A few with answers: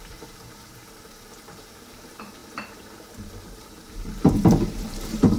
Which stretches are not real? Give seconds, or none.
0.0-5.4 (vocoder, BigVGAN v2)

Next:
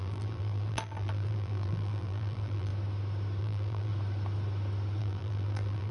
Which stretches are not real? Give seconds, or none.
0.0-2.7 (vocoder, BigVGAN v2); 3.4-3.9; 5.0-5.9

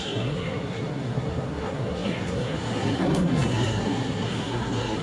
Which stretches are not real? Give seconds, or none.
0.0-5.0 (codec, SNAC)

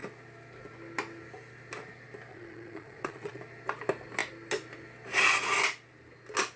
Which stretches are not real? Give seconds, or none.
2.3-3.4 (vocoder, Vocos)